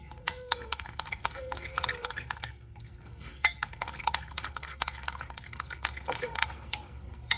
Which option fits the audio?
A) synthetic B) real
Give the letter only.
A